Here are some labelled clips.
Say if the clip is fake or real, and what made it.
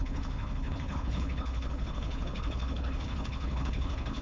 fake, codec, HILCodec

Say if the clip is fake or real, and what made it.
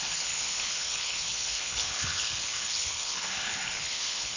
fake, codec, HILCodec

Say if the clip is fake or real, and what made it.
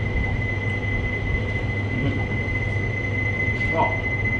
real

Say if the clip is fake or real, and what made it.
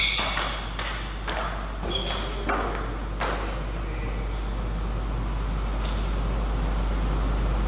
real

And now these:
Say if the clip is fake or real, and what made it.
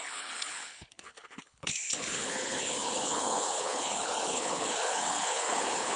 fake, codec, HILCodec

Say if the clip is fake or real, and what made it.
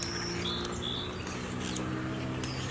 real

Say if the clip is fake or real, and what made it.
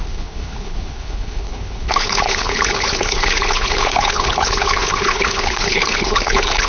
fake, codec, HILCodec